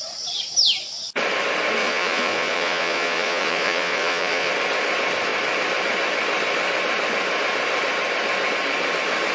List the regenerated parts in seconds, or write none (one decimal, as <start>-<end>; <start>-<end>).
1.8-4.5